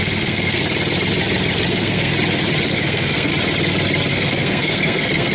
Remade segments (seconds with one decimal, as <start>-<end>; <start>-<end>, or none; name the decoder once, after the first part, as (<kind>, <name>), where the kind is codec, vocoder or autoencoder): 0.0-0.6 (codec, SNAC); 1.7-2.1; 2.7-3.3; 4.1-5.3